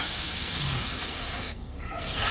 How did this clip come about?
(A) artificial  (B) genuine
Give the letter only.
A